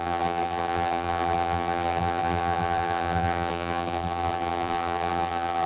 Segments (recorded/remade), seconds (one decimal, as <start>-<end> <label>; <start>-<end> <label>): 0.0-5.7 remade